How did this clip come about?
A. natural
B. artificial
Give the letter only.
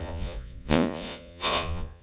B